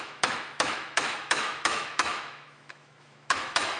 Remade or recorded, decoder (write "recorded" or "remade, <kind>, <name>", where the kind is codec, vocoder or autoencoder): remade, autoencoder, DAC-VAE